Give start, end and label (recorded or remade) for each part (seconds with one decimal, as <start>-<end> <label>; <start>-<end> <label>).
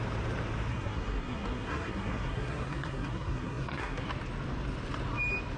0.0-0.7 recorded; 0.7-4.1 remade; 4.1-5.6 recorded